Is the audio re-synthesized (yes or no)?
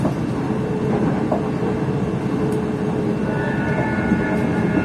no